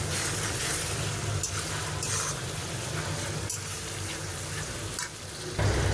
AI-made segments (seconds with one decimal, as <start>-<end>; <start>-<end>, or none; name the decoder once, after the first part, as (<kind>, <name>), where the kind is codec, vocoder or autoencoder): none